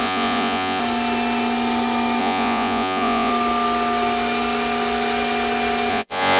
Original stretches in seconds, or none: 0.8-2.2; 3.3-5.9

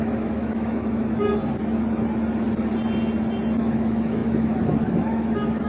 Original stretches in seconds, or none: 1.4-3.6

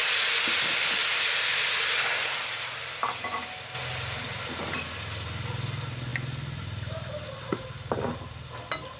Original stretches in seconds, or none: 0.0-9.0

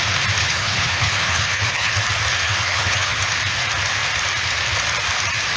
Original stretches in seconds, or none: 0.0-0.4; 1.9-2.3; 3.2-5.6

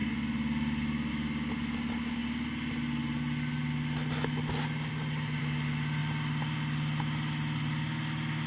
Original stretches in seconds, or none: 0.0-8.5

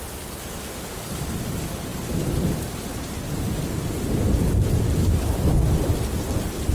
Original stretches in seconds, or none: 0.0-6.7